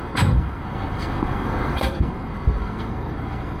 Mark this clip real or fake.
fake